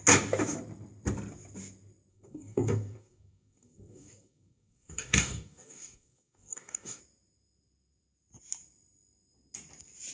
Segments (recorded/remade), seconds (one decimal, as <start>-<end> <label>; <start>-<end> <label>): 0.0-2.1 recorded; 2.1-7.0 remade; 7.0-10.1 recorded